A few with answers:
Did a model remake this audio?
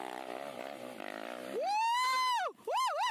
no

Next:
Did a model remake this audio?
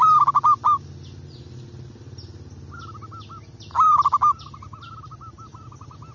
no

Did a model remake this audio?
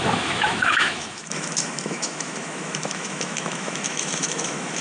yes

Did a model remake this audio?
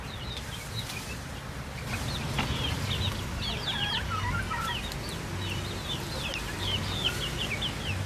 no